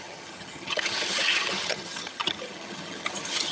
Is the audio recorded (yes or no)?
no